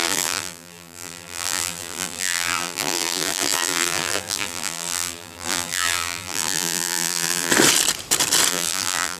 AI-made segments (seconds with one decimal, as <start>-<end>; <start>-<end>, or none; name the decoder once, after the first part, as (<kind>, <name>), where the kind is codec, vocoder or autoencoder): 0.0-7.5 (vocoder, BigVGAN v2); 8.5-9.2